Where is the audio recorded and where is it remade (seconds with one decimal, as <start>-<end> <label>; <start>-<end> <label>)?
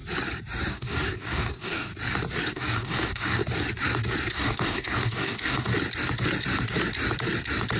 0.0-0.7 recorded; 0.7-1.9 remade; 1.9-2.5 recorded; 2.5-3.4 remade; 3.4-4.3 recorded; 4.3-5.7 remade; 5.7-7.8 recorded